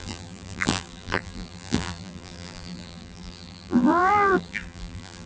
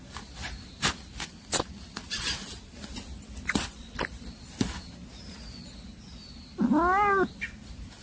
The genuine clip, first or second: second